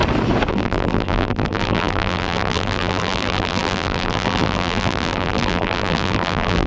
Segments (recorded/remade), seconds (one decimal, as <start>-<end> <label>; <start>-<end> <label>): 0.0-0.5 recorded; 0.5-6.7 remade